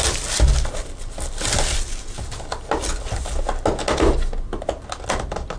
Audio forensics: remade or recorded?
recorded